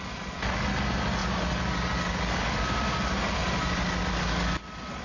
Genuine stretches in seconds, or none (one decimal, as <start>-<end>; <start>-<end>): 0.0-5.0